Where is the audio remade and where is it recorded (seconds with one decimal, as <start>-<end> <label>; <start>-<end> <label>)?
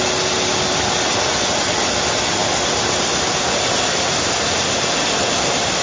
0.0-2.4 recorded; 2.4-5.8 remade